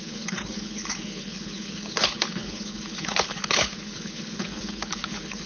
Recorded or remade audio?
remade